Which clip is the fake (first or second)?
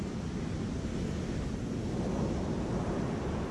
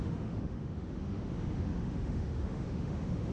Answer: second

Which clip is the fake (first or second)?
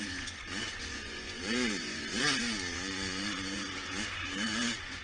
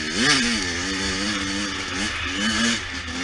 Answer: first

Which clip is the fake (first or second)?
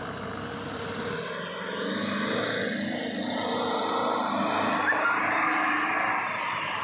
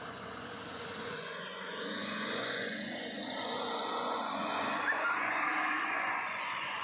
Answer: second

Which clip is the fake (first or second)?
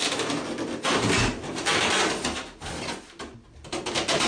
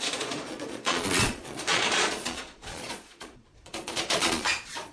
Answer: second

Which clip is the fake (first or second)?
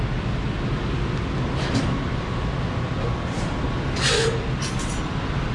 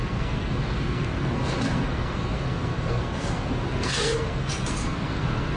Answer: second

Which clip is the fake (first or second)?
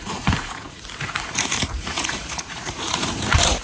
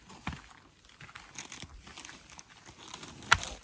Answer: first